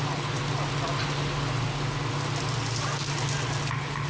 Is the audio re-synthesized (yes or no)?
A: no